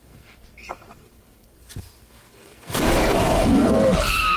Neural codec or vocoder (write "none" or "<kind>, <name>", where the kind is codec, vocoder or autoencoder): codec, SNAC